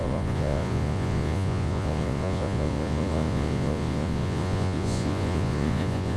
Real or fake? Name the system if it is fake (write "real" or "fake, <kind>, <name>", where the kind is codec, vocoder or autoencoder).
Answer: fake, vocoder, Vocos